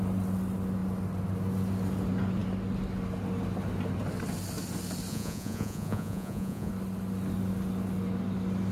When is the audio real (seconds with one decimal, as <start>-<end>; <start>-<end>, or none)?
0.0-5.1; 6.7-8.7